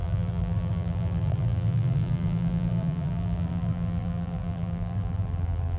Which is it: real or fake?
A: fake